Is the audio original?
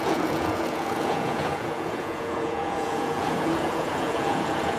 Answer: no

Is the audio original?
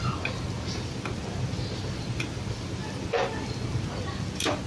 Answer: yes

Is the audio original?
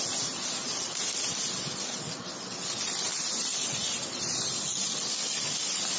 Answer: yes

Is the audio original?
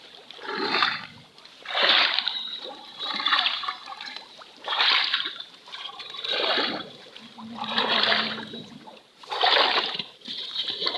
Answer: no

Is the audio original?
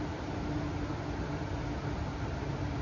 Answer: yes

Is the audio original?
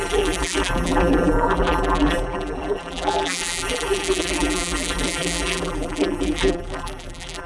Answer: no